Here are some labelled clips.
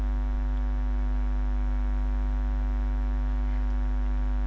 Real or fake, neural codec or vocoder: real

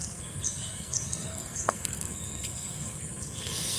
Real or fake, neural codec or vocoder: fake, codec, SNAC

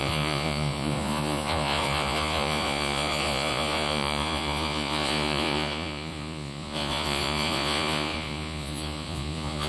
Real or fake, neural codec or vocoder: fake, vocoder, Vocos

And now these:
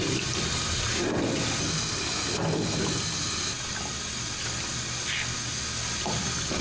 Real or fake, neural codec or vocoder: real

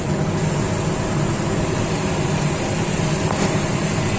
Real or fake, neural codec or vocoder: real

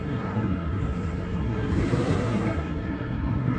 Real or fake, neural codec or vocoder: fake, codec, SNAC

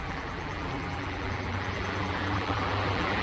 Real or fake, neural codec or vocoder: fake, vocoder, BigVGAN v2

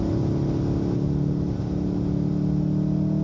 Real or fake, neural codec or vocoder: real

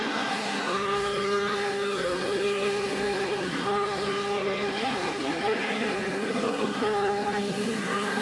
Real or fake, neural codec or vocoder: fake, codec, SNAC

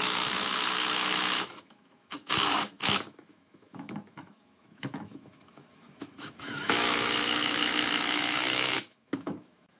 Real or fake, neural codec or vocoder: fake, autoencoder, DAC-VAE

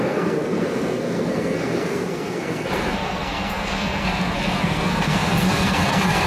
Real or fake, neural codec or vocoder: fake, codec, SNAC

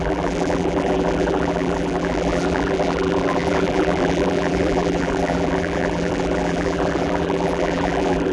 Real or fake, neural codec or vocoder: fake, vocoder, BigVGAN v2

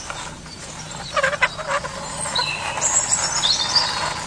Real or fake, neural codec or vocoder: real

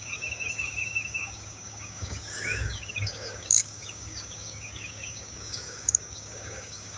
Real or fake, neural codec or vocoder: fake, codec, DAC